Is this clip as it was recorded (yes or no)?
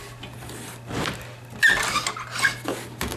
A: yes